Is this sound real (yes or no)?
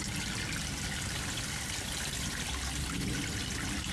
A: yes